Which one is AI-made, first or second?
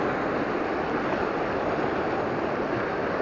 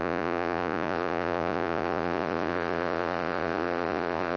second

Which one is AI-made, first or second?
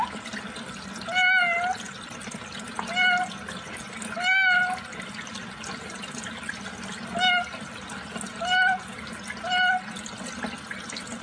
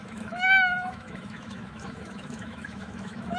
second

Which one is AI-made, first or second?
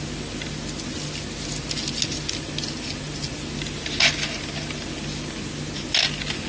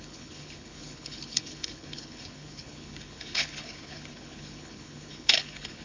second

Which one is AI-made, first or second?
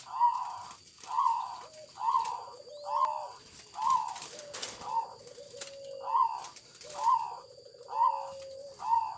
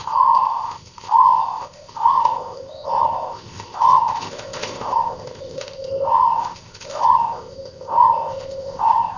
second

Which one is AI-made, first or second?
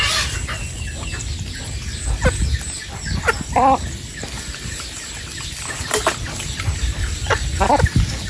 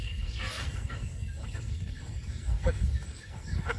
second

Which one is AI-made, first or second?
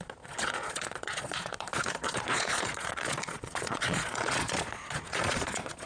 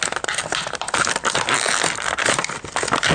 first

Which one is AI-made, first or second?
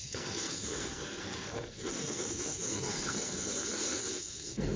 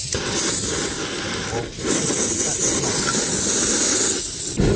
first